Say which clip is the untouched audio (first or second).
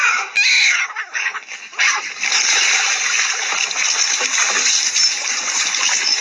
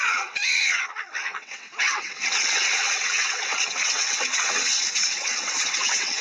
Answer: first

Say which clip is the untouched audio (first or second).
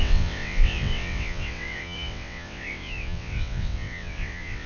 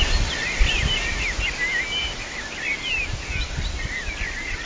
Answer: second